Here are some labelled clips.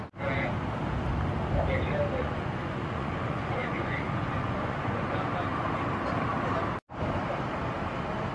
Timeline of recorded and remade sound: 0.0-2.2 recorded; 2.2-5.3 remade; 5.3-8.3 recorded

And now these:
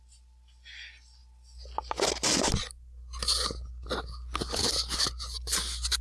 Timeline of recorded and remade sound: 0.0-6.0 recorded

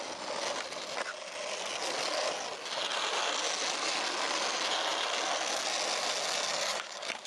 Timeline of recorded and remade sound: 0.0-6.5 recorded; 6.5-7.3 remade

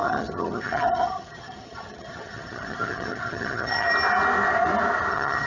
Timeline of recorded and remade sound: 0.0-3.9 remade; 3.9-5.1 recorded; 5.1-5.5 remade

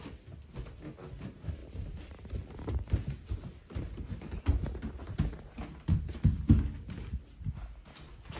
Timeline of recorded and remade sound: 0.0-1.6 recorded; 1.6-4.4 remade; 4.4-8.4 recorded

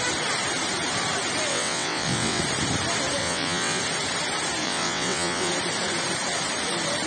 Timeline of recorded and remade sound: 0.0-1.5 recorded; 1.5-2.4 remade; 2.4-3.2 recorded; 3.2-3.8 remade; 3.8-4.6 recorded; 4.6-5.5 remade; 5.5-7.1 recorded

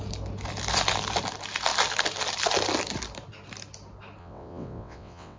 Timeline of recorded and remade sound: 0.0-4.2 recorded; 4.2-5.4 remade